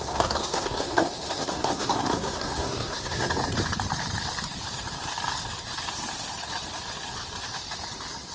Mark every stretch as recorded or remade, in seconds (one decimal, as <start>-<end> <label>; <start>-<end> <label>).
0.0-3.3 remade; 3.3-8.3 recorded

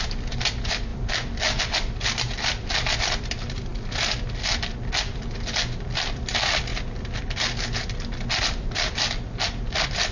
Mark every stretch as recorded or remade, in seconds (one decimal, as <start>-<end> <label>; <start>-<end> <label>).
0.0-3.7 remade; 3.7-5.0 recorded; 5.0-6.7 remade; 6.7-8.4 recorded; 8.4-10.1 remade

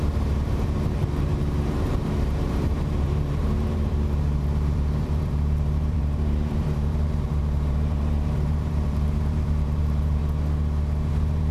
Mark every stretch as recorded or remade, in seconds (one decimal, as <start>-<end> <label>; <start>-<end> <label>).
0.0-10.2 remade; 10.2-11.1 recorded; 11.1-11.5 remade

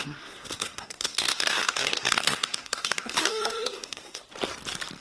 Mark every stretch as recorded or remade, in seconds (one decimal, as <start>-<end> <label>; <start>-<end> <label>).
0.0-4.2 remade; 4.2-5.0 recorded

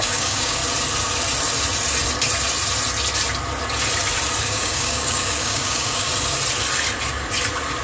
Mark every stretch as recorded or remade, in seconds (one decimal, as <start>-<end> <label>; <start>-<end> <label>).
0.0-0.6 remade; 0.6-4.4 recorded; 4.4-6.1 remade; 6.1-7.8 recorded